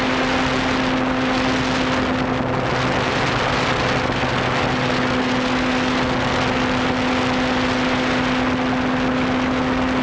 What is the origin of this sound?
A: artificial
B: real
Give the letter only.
B